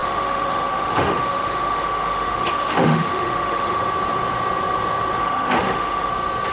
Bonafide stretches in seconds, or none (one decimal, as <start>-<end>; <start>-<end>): 3.8-5.2; 6.1-6.5

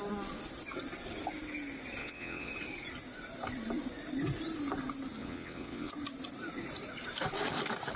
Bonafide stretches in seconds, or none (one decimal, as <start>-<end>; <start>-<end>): 0.0-2.0; 2.5-5.2; 5.9-8.0